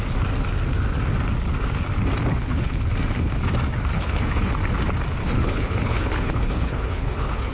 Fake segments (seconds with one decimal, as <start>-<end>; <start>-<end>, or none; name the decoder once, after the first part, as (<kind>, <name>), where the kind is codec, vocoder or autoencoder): 2.3-2.8 (codec, HILCodec); 3.9-4.5; 5.2-7.5